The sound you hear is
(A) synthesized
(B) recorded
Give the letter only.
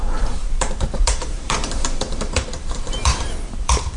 A